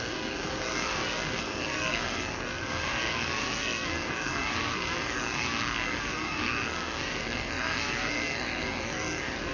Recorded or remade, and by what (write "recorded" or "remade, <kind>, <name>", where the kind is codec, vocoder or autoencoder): remade, codec, SNAC